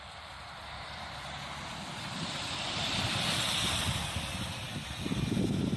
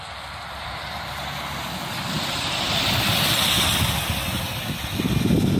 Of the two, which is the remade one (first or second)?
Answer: first